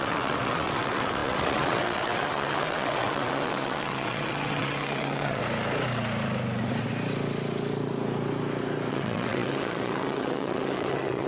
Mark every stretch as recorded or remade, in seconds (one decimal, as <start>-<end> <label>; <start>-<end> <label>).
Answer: 0.0-5.4 remade; 5.4-8.9 recorded; 8.9-11.3 remade